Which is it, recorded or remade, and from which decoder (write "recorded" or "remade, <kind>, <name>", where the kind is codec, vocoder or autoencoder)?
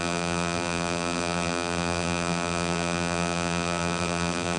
remade, vocoder, BigVGAN v2